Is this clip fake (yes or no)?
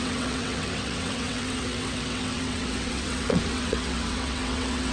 yes